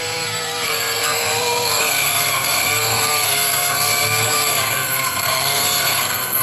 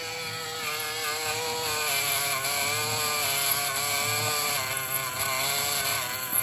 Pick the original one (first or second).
second